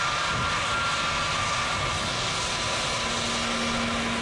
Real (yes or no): yes